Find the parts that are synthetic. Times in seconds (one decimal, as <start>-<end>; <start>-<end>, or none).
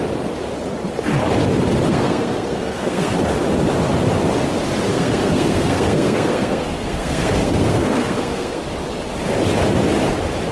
1.9-3.1; 4.9-8.6